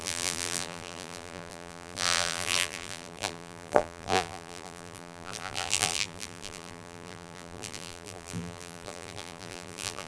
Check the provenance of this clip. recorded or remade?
remade